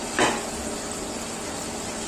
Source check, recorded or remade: recorded